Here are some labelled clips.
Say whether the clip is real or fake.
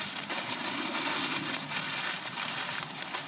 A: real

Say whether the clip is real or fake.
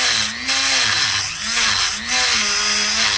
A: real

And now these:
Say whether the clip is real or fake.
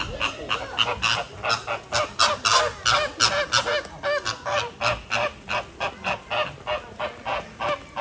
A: real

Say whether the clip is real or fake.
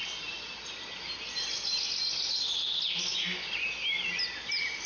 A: real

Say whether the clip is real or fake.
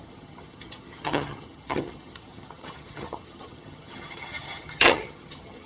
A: fake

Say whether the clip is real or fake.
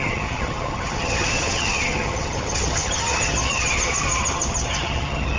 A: fake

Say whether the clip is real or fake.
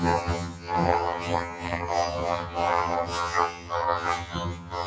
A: fake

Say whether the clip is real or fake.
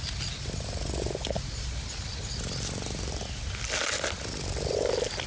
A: real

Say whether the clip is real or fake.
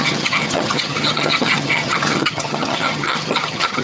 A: fake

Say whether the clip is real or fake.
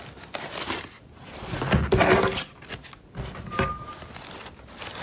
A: real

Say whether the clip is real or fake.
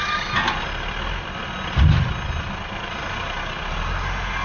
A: real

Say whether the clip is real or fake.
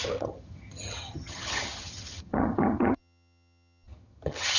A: fake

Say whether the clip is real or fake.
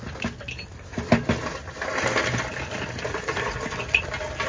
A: real